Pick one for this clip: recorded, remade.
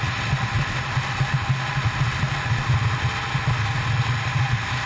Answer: recorded